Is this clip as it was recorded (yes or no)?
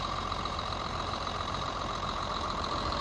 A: no